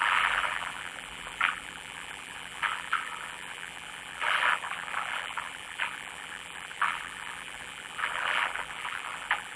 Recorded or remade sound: remade